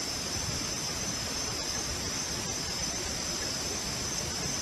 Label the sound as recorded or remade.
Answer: recorded